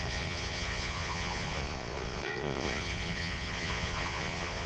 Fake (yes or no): yes